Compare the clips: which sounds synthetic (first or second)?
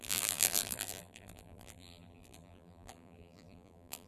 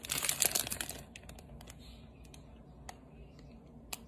first